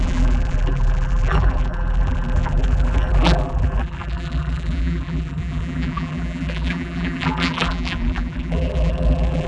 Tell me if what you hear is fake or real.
fake